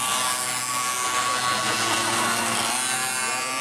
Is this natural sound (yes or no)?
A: yes